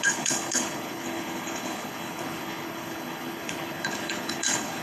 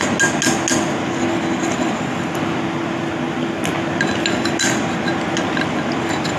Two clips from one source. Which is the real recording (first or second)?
second